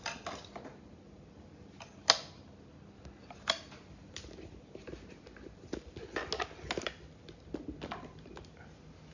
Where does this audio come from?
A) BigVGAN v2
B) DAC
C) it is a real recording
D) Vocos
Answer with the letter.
C